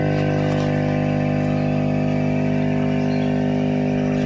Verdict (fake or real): real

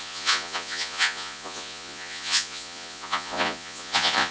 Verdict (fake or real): fake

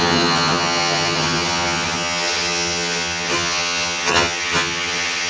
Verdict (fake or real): fake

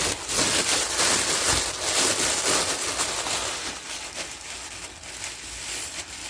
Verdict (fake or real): real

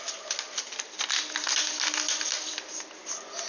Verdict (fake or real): real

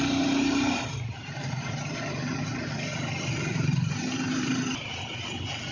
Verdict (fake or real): fake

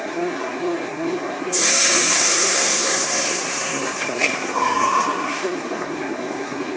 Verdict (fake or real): fake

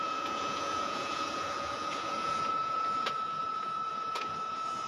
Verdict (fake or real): fake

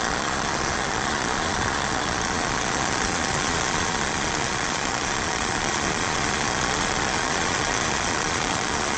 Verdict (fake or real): fake